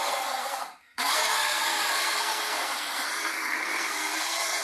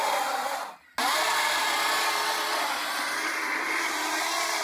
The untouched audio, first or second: second